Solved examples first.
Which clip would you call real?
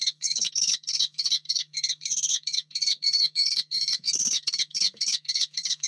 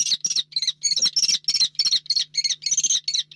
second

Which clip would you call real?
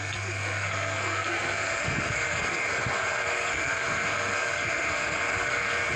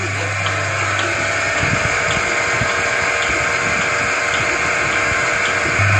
second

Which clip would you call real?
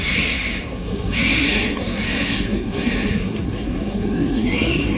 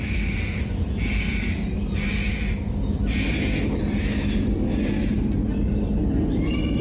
second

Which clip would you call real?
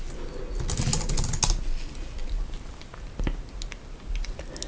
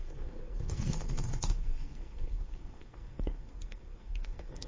first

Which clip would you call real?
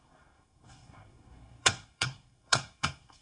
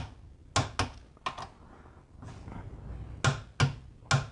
second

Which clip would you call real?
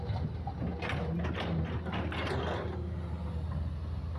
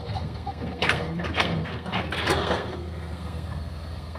first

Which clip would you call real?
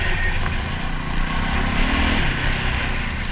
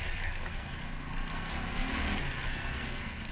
first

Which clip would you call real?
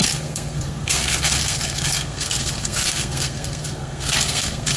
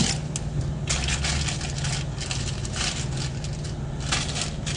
second